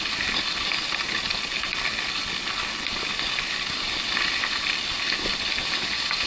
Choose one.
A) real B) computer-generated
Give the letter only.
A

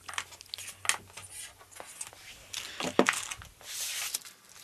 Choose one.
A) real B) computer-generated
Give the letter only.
A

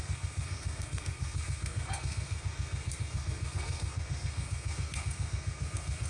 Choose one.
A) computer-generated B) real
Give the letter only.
A